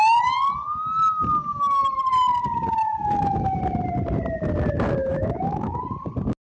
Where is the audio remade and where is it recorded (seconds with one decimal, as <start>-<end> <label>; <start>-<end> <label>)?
0.0-3.0 recorded; 3.0-3.6 remade; 3.6-5.0 recorded; 5.0-5.8 remade; 5.8-6.5 recorded